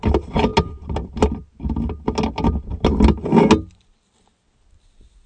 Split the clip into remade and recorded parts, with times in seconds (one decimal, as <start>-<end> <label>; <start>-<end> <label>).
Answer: 0.0-5.3 recorded